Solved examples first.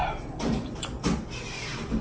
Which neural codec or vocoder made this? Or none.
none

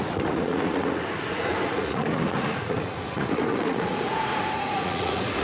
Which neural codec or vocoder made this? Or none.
vocoder, Vocos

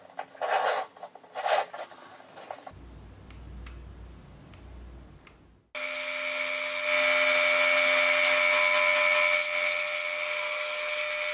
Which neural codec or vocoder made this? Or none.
none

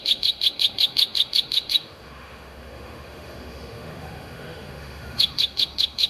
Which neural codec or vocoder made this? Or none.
autoencoder, DAC-VAE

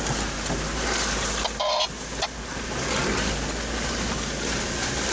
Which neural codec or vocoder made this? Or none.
none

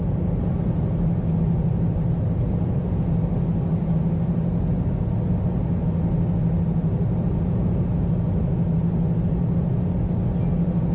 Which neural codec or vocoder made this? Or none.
none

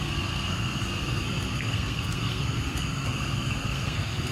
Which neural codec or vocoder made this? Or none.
codec, SNAC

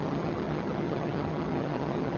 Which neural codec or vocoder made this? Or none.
vocoder, HiFi-GAN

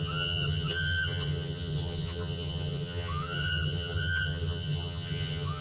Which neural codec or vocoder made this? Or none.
vocoder, HiFi-GAN